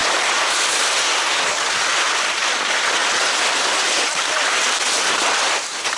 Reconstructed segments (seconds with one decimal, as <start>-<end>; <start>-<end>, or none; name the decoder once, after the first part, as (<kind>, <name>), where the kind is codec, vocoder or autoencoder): 0.8-3.0 (vocoder, BigVGAN v2); 4.0-6.0